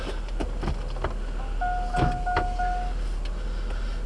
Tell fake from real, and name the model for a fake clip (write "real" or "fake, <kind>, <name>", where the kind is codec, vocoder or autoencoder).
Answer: real